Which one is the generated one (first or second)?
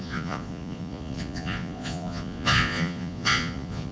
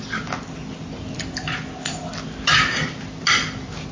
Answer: first